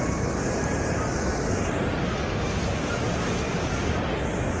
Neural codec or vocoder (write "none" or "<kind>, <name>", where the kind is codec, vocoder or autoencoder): none